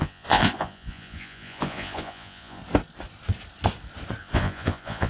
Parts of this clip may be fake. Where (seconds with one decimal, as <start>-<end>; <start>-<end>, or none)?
0.0-2.6; 4.2-5.1